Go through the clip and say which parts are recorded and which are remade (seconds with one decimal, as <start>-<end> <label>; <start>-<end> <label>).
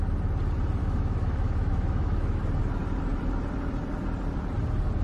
0.0-0.8 recorded; 0.8-2.4 remade; 2.4-5.0 recorded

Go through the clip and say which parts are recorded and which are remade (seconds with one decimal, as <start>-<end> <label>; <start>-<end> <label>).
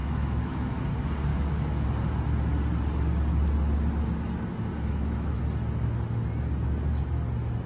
0.0-0.8 remade; 0.8-1.3 recorded; 1.3-1.9 remade; 1.9-4.7 recorded; 4.7-5.4 remade; 5.4-7.7 recorded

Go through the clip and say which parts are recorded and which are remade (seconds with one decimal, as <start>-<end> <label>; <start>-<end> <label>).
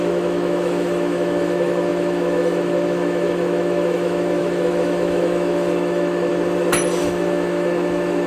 0.0-6.3 remade; 6.3-7.0 recorded; 7.0-8.3 remade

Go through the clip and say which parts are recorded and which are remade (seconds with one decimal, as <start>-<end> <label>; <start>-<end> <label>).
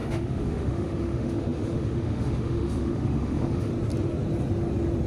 0.0-3.7 remade; 3.7-5.1 recorded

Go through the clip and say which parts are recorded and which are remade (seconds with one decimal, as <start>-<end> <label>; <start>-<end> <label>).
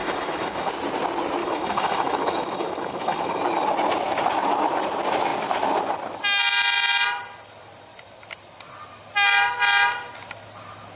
0.0-0.7 remade; 0.7-1.4 recorded; 1.4-3.4 remade; 3.4-11.0 recorded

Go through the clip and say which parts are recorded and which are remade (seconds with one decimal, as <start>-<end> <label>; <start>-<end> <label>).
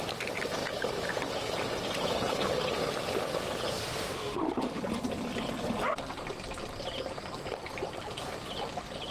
0.0-3.8 recorded; 3.8-4.8 remade; 4.8-9.1 recorded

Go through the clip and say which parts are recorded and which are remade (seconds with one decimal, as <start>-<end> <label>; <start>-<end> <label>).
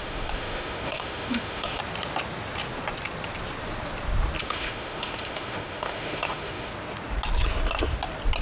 0.0-1.8 remade; 1.8-4.4 recorded; 4.4-6.7 remade; 6.7-8.4 recorded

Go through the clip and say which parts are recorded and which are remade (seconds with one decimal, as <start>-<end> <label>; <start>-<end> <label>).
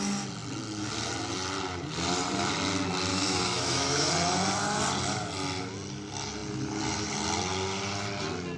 0.0-3.1 recorded; 3.1-4.1 remade; 4.1-8.6 recorded